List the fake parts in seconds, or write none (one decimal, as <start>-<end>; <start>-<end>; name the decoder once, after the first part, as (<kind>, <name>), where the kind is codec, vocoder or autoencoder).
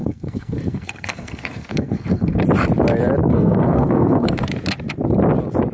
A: 0.0-2.4 (codec, SNAC); 3.2-4.5